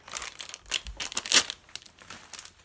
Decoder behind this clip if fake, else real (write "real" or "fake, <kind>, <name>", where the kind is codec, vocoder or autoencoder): real